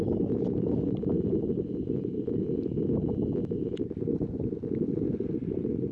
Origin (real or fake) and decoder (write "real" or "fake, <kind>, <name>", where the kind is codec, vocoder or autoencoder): real